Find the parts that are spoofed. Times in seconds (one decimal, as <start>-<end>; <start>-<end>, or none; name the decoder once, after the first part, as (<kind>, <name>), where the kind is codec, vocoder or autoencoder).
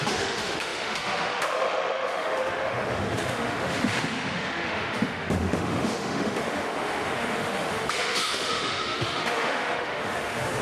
0.0-10.6 (autoencoder, DAC-VAE)